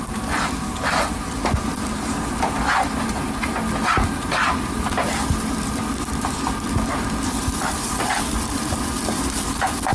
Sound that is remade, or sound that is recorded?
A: remade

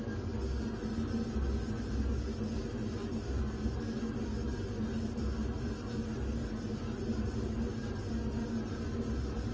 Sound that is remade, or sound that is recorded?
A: recorded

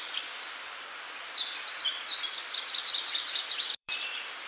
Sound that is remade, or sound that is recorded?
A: remade